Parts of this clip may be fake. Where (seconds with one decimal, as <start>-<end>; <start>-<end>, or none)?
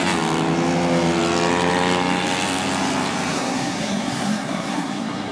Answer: 3.3-5.3